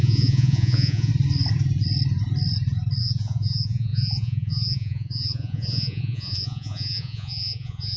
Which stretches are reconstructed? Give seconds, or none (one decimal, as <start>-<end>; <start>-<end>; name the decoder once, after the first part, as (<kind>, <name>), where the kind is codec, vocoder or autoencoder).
0.0-1.1 (vocoder, Vocos); 3.0-8.0